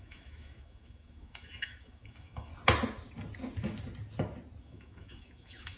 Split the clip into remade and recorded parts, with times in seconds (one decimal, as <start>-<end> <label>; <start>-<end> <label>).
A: 0.0-2.5 remade; 2.5-4.6 recorded; 4.6-5.8 remade